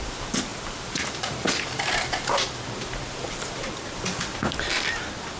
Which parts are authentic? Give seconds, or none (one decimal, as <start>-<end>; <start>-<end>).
none